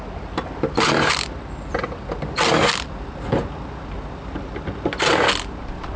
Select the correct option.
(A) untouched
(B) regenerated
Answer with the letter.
A